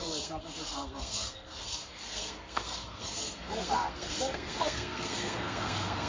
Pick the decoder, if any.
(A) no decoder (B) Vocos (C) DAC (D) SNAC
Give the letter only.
D